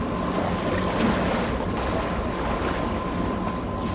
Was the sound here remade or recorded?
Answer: recorded